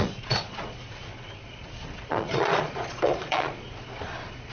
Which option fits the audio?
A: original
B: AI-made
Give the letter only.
B